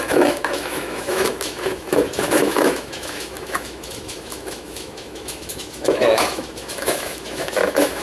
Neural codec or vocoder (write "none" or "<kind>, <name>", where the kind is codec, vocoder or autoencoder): autoencoder, DAC-VAE